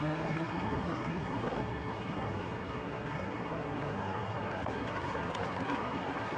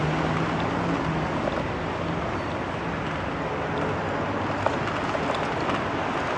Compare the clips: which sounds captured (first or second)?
second